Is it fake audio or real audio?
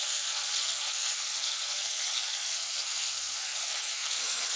fake